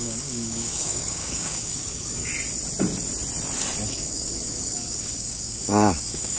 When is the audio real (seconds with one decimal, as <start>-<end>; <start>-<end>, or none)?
2.3-3.9